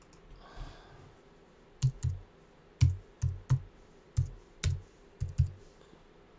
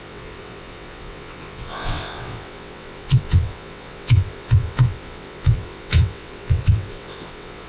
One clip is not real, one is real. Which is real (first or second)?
first